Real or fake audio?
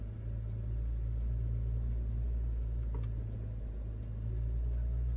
real